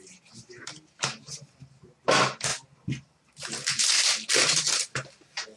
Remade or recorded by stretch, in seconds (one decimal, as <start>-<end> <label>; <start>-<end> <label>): 0.0-5.6 recorded

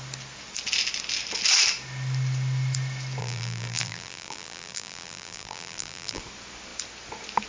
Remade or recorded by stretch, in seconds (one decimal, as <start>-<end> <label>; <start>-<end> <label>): 0.0-3.2 recorded; 3.2-6.2 remade; 6.2-7.5 recorded

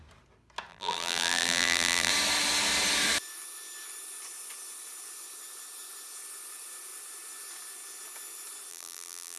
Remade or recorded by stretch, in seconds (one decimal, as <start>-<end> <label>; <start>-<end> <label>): 0.0-0.7 recorded; 0.7-2.1 remade; 2.1-8.7 recorded; 8.7-9.4 remade